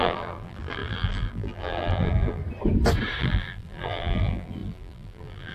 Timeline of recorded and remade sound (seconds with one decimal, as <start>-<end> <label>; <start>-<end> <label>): 0.0-2.4 remade; 2.4-3.2 recorded; 3.2-5.5 remade